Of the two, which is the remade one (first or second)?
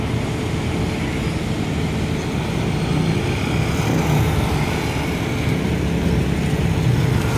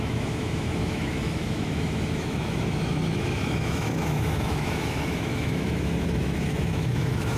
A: second